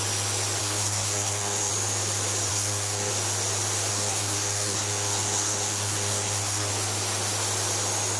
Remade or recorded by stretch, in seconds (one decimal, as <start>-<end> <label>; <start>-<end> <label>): 0.0-0.6 recorded; 0.6-1.7 remade; 1.7-2.5 recorded; 2.5-3.1 remade; 3.1-3.9 recorded; 3.9-6.7 remade; 6.7-8.2 recorded